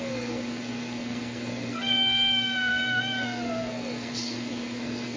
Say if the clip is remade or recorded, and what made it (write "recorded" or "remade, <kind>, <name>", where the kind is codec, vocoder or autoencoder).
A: remade, codec, SNAC